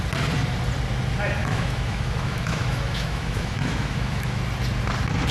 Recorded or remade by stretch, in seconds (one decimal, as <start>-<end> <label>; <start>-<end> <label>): 0.0-1.4 recorded; 1.4-4.4 remade; 4.4-5.3 recorded